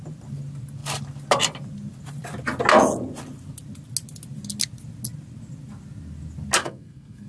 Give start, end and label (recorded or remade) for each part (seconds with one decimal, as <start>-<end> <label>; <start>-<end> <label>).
0.0-6.6 recorded; 6.6-7.3 remade